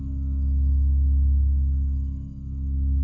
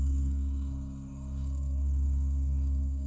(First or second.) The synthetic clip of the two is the second